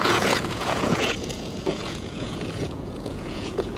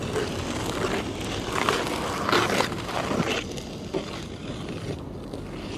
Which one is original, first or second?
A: second